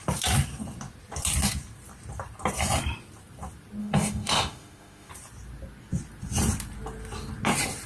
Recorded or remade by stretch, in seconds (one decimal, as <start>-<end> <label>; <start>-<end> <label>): 0.0-3.8 recorded; 3.8-5.1 remade; 5.1-7.9 recorded